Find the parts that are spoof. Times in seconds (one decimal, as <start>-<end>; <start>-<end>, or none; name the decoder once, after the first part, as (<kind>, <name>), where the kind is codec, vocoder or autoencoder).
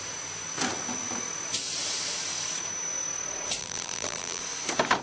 3.6-4.4 (vocoder, BigVGAN v2)